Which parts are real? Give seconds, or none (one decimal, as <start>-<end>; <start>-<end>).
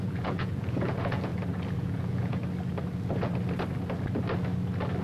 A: 1.3-1.8; 2.4-5.0